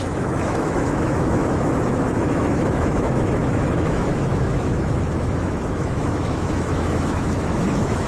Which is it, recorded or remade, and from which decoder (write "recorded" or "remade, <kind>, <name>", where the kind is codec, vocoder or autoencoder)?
remade, autoencoder, DAC-VAE